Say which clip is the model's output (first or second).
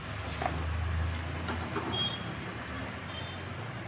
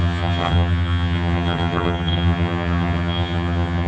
second